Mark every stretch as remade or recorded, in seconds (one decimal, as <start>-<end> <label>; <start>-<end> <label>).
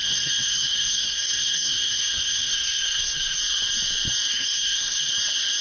0.0-3.4 remade; 3.4-4.3 recorded; 4.3-5.1 remade; 5.1-5.6 recorded